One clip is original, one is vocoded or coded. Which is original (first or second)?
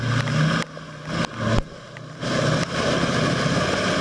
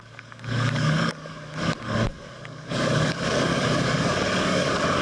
first